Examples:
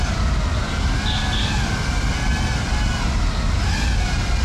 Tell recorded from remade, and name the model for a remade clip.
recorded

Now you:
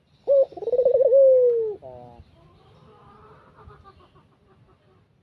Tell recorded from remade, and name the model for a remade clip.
recorded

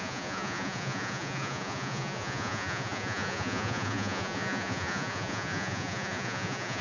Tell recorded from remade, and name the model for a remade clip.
remade, vocoder, Vocos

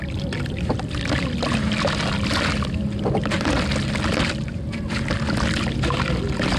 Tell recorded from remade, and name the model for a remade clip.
recorded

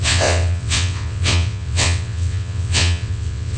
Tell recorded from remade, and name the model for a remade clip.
remade, vocoder, WaveNeXt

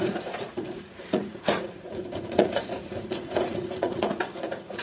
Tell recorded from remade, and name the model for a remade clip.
remade, vocoder, Vocos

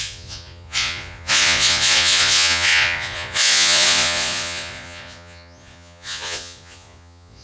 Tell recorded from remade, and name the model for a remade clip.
remade, vocoder, Vocos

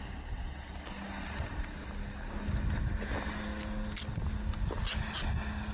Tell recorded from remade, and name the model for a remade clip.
recorded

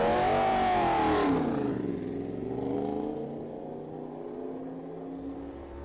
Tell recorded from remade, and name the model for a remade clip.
recorded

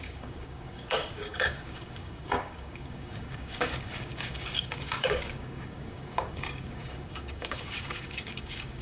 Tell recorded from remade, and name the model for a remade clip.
remade, codec, DAC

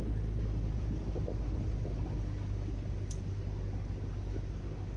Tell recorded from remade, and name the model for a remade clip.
recorded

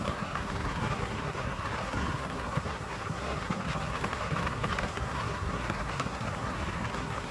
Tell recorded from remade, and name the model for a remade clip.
remade, codec, SNAC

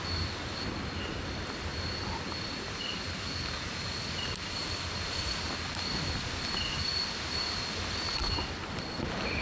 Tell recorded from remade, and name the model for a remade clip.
recorded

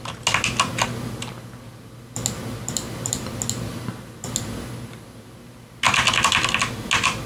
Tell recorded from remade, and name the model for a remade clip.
recorded